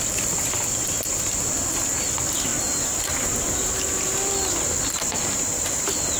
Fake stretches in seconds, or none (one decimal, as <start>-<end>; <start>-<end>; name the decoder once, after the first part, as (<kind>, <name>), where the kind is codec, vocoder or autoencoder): 2.5-3.2 (vocoder, BigVGAN v2)